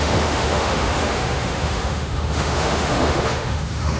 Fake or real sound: fake